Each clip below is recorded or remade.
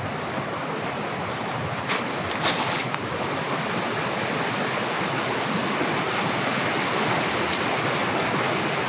recorded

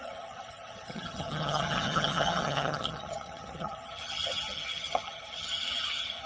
remade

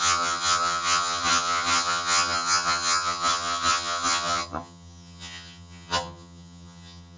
remade